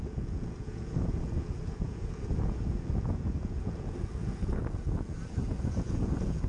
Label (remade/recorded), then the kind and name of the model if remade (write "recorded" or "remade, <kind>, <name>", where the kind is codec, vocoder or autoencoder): remade, vocoder, Vocos